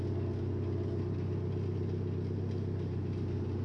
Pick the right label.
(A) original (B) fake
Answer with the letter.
A